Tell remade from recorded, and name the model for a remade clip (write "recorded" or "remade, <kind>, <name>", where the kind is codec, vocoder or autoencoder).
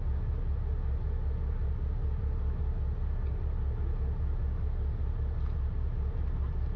recorded